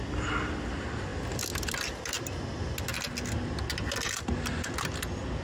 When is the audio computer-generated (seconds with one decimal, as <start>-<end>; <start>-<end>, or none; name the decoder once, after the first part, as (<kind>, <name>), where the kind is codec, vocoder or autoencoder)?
none